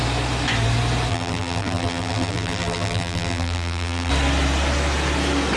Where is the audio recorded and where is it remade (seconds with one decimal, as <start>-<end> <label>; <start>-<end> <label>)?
0.0-1.1 recorded; 1.1-4.1 remade; 4.1-5.6 recorded